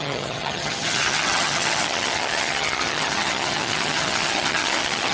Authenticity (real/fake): fake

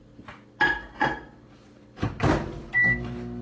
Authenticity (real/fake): real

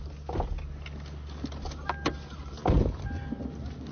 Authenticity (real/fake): real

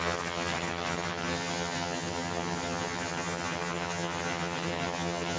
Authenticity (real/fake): fake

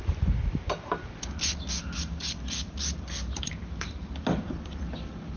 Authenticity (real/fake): real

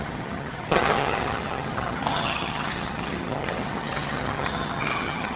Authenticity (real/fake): fake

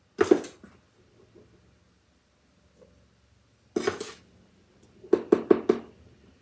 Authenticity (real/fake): real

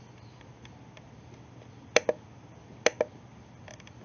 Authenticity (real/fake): real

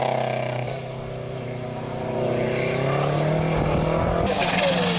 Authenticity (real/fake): real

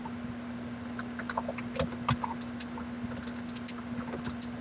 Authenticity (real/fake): real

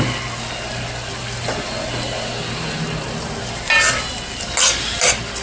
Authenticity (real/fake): real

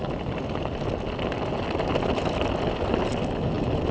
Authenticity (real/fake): real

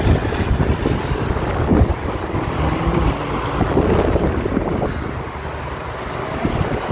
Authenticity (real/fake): real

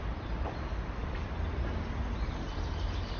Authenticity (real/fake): real